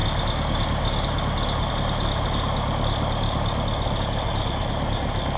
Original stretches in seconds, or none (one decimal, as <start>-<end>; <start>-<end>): 0.0-5.4